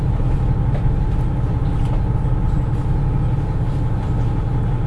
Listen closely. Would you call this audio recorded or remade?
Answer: recorded